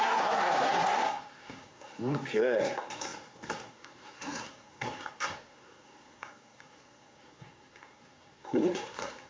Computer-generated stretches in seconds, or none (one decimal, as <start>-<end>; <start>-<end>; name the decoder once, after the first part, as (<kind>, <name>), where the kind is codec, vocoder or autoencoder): 0.0-9.3 (codec, SNAC)